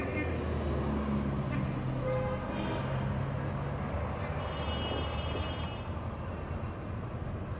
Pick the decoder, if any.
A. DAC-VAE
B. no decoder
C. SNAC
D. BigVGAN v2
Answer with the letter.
B